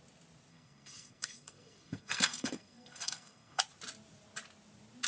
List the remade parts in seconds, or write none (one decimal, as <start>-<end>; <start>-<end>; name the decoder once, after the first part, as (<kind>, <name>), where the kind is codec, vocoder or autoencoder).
0.5-3.6 (codec, SNAC)